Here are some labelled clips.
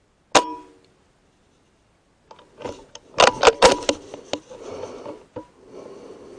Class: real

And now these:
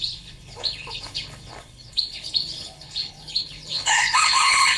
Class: fake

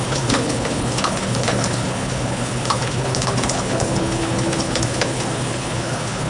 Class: fake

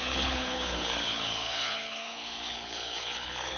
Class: fake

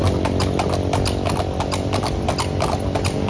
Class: real